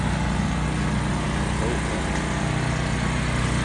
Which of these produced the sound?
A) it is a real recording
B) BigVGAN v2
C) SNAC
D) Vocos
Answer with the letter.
A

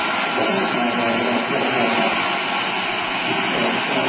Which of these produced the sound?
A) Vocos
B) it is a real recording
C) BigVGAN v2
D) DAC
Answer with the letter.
B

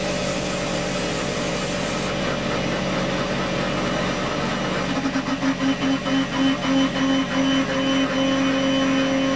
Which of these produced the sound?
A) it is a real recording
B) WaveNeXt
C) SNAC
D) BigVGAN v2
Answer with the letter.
A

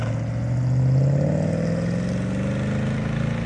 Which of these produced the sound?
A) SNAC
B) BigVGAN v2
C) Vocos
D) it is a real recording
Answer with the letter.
D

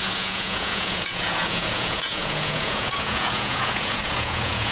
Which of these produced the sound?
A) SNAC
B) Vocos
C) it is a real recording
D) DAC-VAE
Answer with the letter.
B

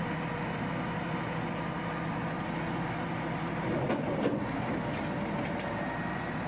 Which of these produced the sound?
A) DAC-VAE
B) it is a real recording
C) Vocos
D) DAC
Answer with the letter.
B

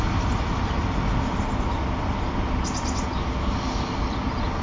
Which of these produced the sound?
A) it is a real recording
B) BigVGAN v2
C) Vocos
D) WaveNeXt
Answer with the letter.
A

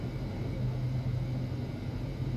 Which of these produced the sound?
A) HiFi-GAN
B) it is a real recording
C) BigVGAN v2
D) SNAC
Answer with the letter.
B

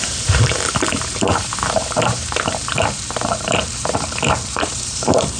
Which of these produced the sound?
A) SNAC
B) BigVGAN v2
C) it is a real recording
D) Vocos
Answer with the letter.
B